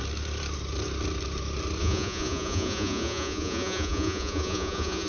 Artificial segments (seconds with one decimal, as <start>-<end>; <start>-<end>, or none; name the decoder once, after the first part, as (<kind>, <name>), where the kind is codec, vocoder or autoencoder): 1.8-5.1 (vocoder, Vocos)